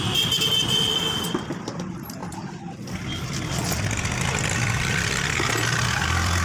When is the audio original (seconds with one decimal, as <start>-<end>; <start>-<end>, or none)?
0.0-6.4